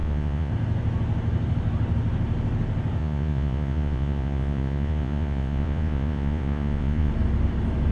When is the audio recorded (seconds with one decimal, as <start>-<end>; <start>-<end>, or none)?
0.5-3.0; 7.1-7.9